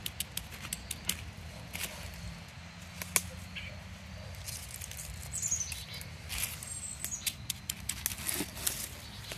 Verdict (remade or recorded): recorded